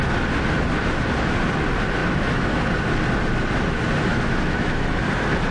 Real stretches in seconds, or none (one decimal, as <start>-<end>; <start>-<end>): 0.0-2.0; 2.7-4.1; 5.0-5.5

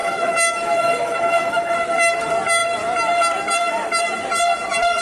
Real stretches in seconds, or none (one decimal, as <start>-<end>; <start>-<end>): 1.7-5.0